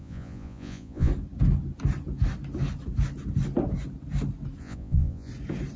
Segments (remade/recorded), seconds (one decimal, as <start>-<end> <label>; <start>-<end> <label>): 0.0-1.1 remade; 1.1-4.6 recorded; 4.6-5.3 remade; 5.3-5.8 recorded